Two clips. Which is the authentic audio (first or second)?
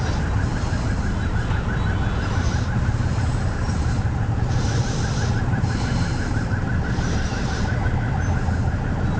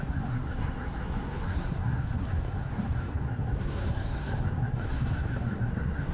first